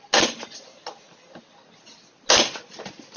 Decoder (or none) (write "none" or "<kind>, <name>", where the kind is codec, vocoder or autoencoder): none